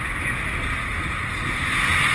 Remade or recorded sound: recorded